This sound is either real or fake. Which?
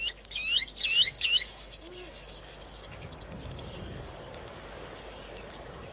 fake